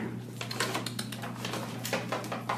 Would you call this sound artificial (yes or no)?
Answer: no